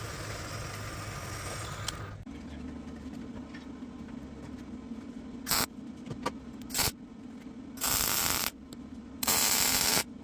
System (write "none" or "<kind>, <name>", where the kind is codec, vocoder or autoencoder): none